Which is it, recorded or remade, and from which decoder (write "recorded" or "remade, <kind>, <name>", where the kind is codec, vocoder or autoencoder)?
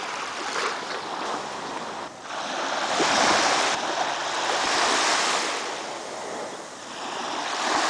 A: recorded